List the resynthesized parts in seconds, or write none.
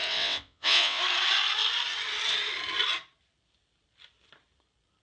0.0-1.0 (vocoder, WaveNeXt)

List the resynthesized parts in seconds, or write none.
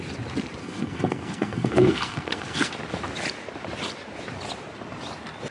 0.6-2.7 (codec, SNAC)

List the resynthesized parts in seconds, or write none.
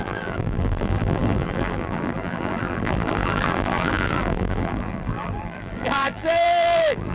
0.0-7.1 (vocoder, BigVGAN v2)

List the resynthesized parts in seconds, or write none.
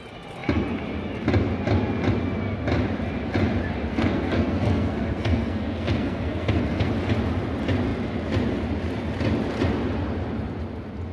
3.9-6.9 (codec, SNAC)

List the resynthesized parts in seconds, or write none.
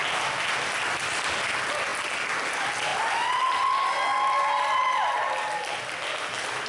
none